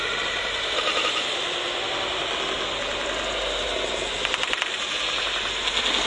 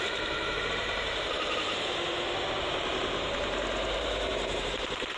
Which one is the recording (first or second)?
first